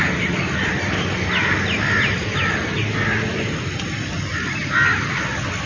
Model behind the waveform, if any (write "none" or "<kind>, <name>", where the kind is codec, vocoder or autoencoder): none